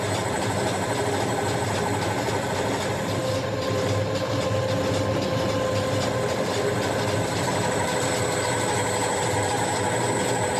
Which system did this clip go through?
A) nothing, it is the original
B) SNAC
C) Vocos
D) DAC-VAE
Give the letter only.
A